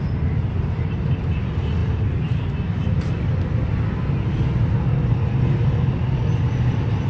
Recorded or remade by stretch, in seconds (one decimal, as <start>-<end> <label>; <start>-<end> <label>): 0.0-7.1 recorded